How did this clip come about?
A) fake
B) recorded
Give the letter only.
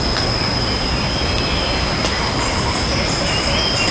B